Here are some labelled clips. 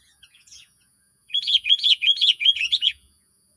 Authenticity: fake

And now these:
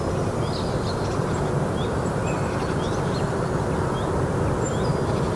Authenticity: real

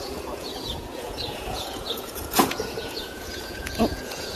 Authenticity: fake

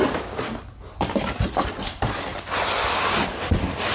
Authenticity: real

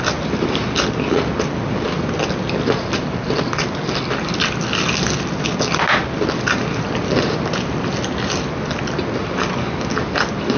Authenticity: real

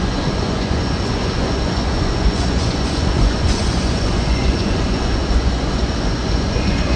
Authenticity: fake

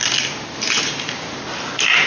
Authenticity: real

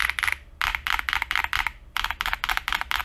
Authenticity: real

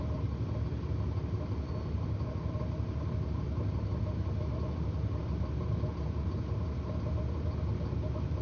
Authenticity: real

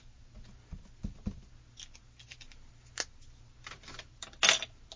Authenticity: real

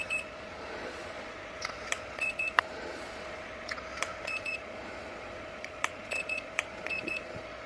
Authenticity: fake